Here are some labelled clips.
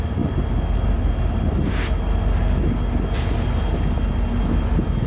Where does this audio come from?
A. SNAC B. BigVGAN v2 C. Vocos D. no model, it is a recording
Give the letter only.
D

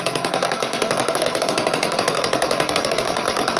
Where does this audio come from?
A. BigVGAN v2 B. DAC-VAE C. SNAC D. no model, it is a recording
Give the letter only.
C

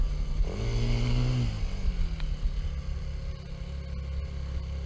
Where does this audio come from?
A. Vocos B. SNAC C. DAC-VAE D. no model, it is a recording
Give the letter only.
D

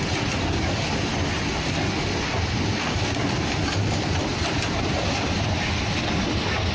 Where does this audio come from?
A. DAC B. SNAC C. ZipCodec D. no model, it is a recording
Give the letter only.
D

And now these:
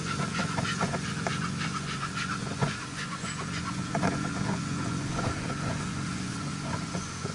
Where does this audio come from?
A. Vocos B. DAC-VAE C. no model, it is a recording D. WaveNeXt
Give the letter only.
A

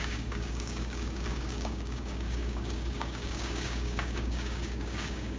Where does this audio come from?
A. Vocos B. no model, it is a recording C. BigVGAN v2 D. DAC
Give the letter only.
D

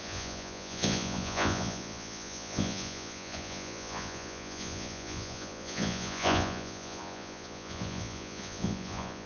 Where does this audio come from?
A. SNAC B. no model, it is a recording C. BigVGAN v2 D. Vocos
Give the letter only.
D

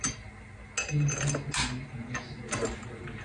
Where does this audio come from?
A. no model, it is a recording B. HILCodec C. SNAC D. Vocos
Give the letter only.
A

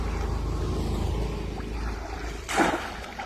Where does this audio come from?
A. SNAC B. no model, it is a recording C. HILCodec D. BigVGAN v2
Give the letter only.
B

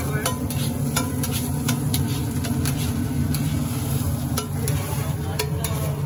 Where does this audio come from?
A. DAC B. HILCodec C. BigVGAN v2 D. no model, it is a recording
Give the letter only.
D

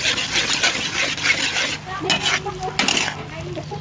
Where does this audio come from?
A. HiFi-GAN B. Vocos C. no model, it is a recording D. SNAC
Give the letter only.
C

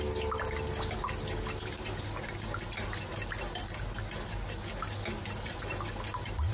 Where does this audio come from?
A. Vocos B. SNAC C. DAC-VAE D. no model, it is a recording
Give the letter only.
D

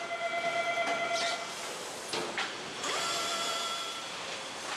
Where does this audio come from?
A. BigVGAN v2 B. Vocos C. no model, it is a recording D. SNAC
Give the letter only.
C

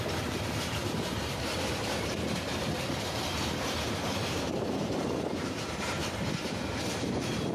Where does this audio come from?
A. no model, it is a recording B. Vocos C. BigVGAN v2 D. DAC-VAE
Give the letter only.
C